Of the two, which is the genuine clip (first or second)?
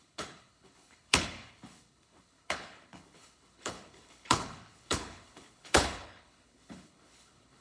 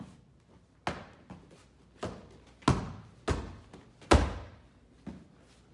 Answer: second